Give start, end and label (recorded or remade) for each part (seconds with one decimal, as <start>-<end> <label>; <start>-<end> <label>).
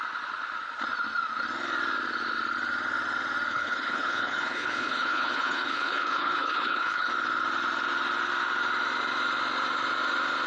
0.0-3.5 recorded; 3.5-7.1 remade; 7.1-10.5 recorded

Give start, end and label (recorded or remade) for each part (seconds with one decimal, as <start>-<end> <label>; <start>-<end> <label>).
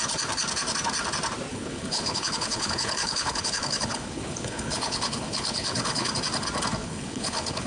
0.0-1.5 recorded; 1.5-6.1 remade; 6.1-6.8 recorded; 6.8-7.7 remade